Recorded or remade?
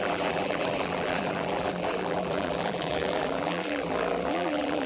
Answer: remade